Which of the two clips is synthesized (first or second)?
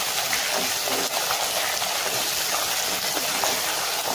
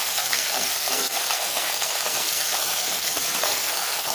second